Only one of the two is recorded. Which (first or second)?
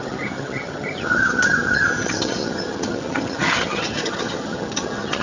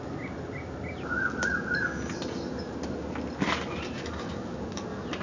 second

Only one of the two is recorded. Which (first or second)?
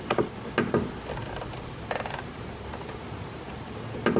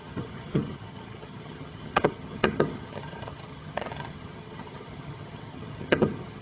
first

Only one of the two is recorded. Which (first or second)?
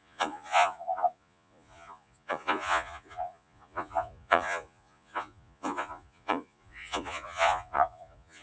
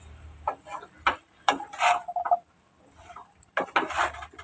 second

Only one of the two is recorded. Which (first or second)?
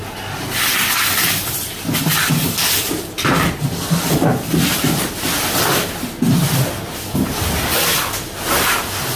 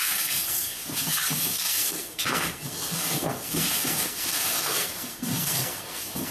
first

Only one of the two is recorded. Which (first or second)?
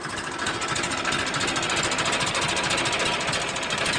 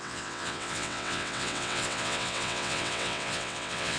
first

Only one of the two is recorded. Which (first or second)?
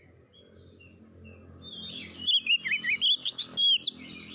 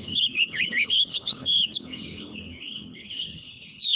first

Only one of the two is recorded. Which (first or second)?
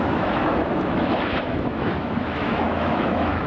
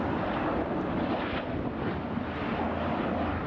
second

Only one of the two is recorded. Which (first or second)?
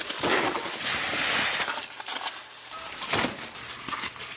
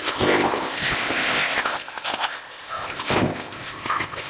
first